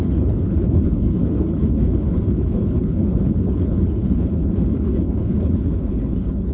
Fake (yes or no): yes